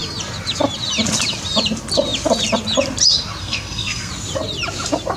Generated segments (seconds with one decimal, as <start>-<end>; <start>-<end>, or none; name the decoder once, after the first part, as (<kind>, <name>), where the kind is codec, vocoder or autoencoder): 3.4-4.1 (codec, SNAC)